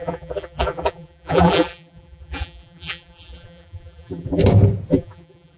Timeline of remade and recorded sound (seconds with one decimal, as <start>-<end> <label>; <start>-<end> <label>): 0.0-4.4 remade; 4.4-4.9 recorded; 4.9-5.6 remade